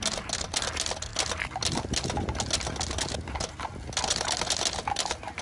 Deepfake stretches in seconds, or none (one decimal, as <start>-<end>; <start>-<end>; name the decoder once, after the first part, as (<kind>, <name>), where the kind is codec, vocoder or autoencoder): none